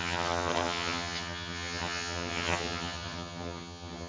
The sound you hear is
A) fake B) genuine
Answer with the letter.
A